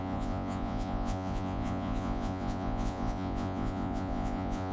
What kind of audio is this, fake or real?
fake